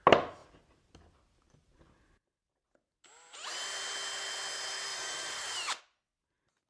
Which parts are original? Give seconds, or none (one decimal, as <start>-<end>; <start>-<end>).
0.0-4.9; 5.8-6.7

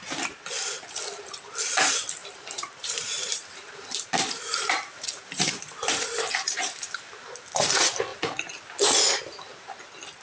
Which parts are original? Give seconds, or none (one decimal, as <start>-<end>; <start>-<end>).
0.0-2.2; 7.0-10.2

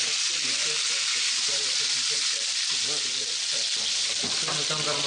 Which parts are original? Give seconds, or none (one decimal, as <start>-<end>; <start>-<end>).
0.0-0.6; 2.4-5.1

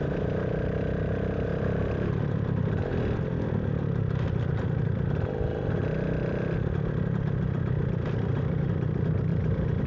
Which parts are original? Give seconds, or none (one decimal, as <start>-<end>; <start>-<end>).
0.0-1.5; 2.9-9.3

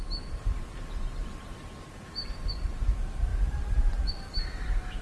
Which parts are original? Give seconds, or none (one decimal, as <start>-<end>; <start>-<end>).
1.2-1.9

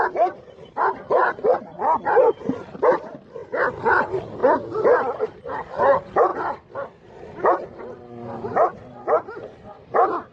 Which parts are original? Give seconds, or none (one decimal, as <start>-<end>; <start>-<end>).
3.4-4.0; 4.4-5.2; 6.3-7.1

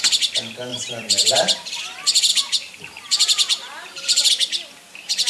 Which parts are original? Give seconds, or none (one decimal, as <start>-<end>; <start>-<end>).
0.0-0.7; 1.8-2.3; 4.3-5.3

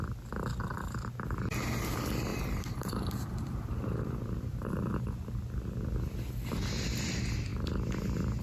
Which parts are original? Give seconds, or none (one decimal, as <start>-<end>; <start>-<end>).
0.0-2.3; 5.1-8.4